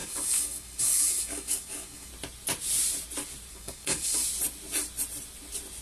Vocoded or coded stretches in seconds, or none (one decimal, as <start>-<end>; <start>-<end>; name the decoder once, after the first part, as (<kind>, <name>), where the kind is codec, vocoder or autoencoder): 0.0-2.1 (codec, DAC); 3.5-4.2